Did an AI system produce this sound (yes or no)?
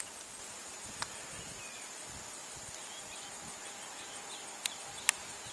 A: no